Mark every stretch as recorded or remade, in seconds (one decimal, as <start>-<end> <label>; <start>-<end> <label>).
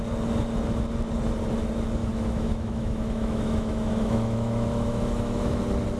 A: 0.0-2.0 recorded; 2.0-5.6 remade; 5.6-6.0 recorded